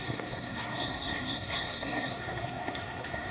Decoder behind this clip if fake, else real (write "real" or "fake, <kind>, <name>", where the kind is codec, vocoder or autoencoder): fake, codec, SNAC